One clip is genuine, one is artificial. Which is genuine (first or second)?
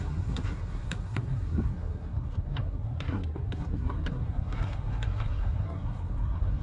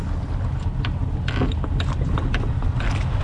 second